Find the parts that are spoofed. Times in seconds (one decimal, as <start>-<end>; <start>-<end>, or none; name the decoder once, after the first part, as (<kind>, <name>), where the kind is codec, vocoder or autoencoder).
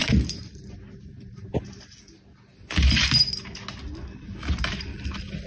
0.0-1.8 (vocoder, BigVGAN v2)